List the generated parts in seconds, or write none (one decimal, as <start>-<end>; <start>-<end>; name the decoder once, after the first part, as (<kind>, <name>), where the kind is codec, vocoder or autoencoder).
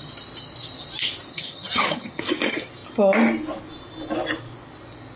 1.3-2.2 (vocoder, HiFi-GAN)